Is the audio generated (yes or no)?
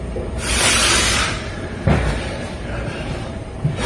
yes